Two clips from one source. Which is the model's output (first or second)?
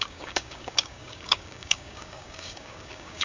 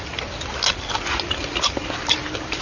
first